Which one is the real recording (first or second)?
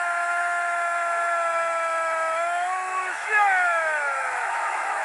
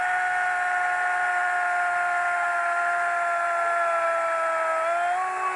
second